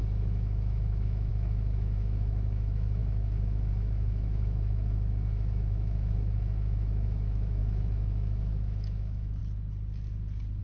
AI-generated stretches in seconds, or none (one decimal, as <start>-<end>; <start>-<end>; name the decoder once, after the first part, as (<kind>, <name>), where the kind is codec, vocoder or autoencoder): 0.0-9.4 (autoencoder, DAC-VAE)